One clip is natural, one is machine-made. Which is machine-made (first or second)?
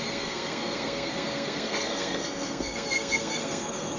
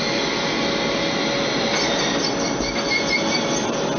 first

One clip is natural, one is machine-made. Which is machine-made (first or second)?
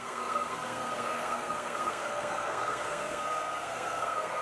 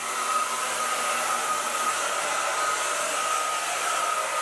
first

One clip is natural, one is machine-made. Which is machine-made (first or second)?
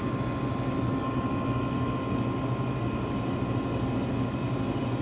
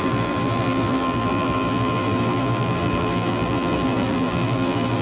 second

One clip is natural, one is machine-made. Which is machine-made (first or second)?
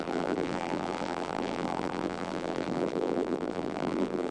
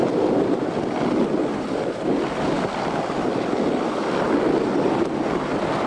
first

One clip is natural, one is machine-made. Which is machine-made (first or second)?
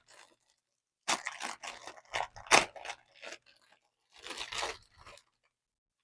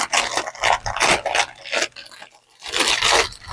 second